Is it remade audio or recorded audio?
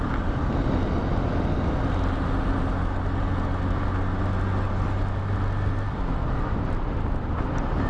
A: recorded